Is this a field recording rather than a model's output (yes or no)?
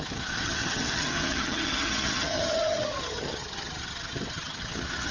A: no